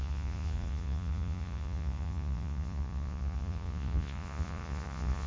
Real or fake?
fake